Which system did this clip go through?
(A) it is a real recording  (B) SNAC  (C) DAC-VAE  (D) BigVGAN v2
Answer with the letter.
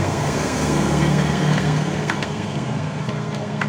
B